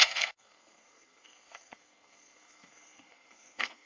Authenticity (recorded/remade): remade